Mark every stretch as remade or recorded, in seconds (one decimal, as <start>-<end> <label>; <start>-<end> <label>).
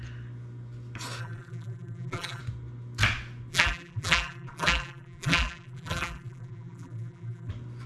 0.0-1.2 recorded; 1.2-2.4 remade; 2.4-3.5 recorded; 3.5-7.5 remade; 7.5-7.9 recorded